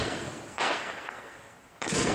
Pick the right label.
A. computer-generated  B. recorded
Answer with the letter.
A